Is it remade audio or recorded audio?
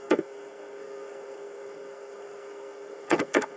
remade